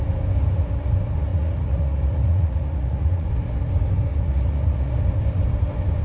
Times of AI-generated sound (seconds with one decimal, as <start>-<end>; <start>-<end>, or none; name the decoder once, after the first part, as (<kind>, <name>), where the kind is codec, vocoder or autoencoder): 1.3-3.3 (vocoder, Vocos); 4.1-4.9